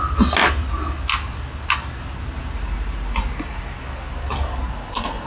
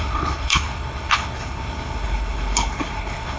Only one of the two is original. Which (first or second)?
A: first